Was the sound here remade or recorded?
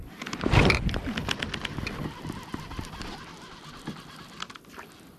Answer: recorded